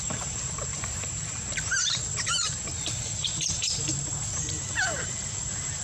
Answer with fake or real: fake